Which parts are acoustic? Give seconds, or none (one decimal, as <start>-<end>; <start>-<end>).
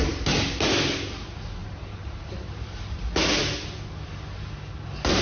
0.0-5.2